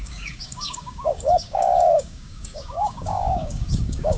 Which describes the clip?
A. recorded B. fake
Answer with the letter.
B